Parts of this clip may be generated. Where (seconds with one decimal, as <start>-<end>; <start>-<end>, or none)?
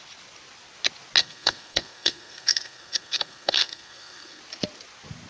1.2-4.4